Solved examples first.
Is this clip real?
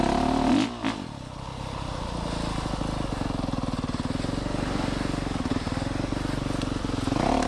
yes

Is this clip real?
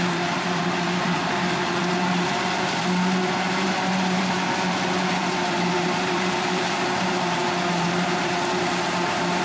no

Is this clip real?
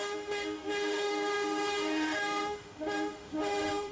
no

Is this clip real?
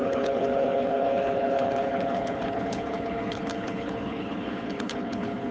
no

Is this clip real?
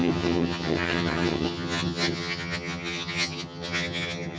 no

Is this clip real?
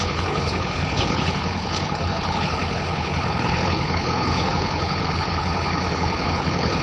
no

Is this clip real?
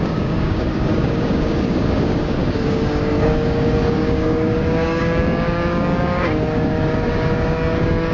no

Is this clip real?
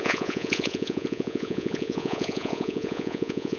no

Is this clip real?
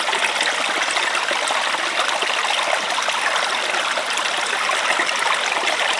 yes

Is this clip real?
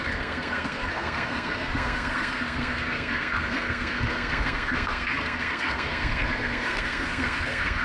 no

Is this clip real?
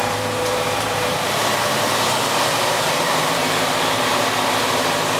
no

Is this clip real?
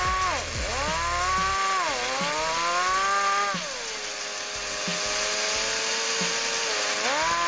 yes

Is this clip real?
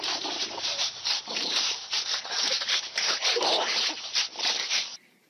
no